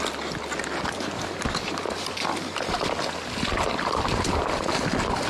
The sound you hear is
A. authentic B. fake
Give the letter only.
A